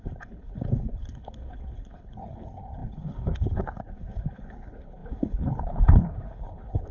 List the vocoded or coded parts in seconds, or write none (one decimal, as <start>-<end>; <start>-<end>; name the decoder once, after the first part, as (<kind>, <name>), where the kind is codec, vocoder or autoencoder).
0.0-6.9 (codec, HILCodec)